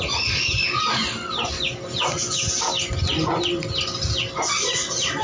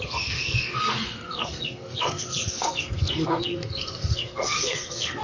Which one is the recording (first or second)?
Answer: first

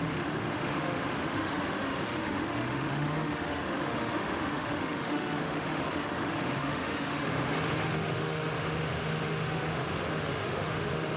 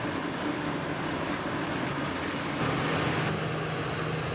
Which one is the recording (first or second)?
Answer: second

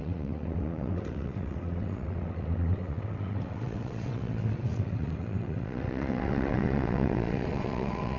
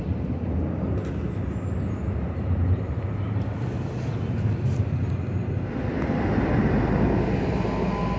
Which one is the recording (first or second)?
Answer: second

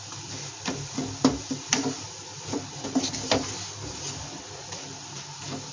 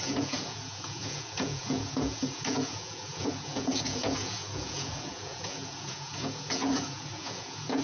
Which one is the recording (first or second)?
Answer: first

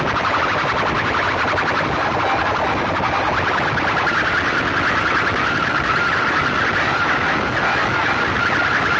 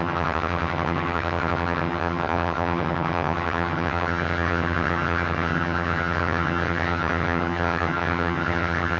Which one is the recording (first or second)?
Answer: first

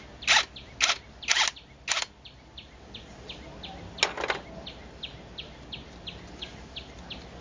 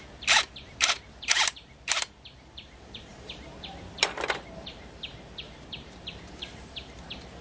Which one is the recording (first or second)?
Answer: first